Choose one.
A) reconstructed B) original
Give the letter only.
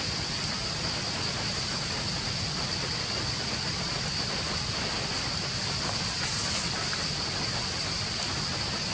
B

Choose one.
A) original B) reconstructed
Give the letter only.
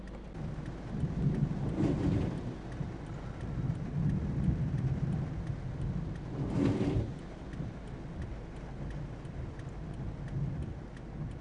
A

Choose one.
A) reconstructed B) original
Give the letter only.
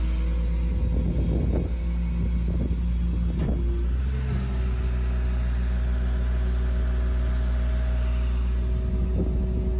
B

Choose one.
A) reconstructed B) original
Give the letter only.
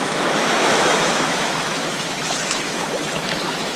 A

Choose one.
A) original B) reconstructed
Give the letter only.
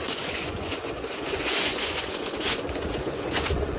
B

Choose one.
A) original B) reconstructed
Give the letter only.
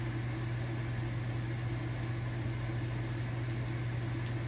A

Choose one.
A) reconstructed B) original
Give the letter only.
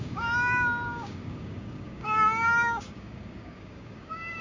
A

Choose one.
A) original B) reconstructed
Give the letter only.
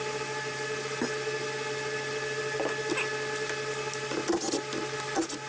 A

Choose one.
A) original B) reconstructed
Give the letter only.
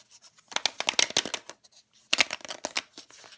A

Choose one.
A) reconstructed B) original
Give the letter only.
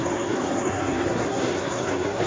A